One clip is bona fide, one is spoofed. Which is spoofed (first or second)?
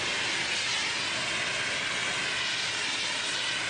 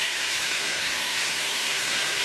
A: second